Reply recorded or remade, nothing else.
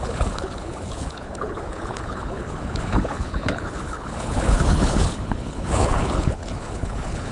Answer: remade